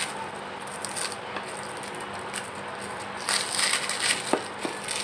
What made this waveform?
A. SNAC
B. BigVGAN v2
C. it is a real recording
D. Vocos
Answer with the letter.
C